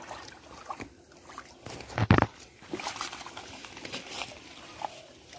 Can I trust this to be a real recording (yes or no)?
yes